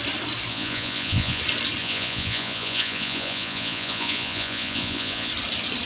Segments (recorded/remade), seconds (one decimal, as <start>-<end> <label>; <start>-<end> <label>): 0.0-0.5 recorded; 0.5-1.4 remade; 1.4-1.8 recorded; 1.8-5.3 remade; 5.3-5.9 recorded